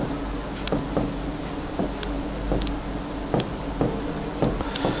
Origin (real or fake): real